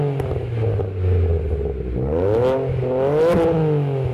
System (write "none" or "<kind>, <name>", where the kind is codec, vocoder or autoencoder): none